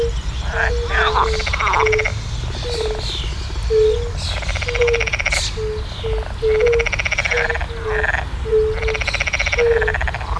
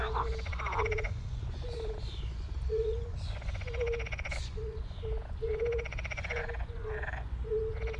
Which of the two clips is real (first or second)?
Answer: first